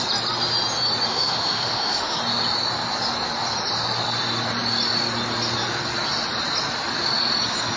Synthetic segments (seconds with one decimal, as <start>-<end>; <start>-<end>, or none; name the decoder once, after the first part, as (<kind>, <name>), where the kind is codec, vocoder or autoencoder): 1.1-2.2 (autoencoder, DAC-VAE)